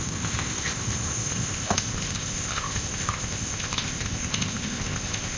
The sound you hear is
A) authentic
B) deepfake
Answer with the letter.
B